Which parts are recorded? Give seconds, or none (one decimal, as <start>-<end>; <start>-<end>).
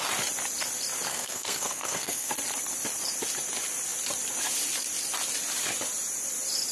0.0-1.1; 2.3-6.7